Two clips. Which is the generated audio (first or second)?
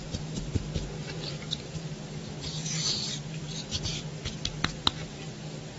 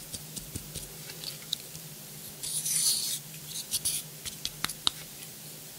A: second